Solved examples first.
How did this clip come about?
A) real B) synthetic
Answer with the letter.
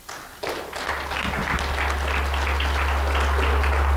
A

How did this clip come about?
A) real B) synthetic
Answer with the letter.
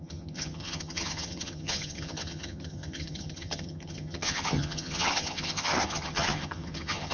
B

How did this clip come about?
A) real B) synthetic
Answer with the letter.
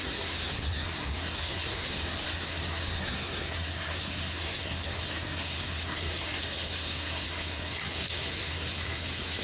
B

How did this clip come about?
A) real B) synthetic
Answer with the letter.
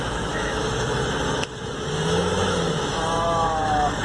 B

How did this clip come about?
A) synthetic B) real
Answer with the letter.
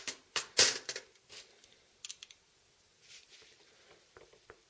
B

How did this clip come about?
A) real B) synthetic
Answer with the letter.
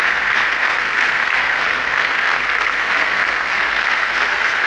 B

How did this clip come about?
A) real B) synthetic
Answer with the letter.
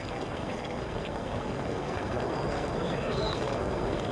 B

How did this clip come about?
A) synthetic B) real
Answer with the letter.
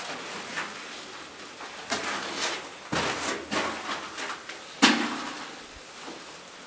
B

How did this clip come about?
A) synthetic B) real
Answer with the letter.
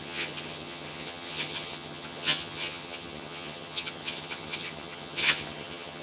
A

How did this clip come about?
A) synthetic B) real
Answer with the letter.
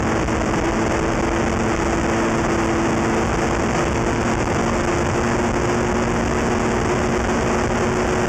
B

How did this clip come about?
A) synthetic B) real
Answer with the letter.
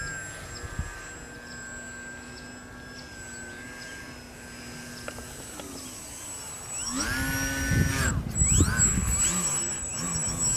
B